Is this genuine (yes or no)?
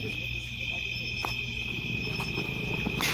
yes